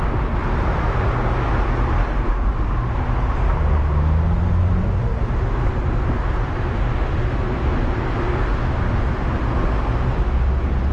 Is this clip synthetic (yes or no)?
no